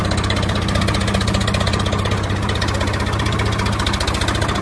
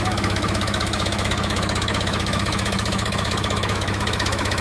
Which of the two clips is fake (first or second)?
second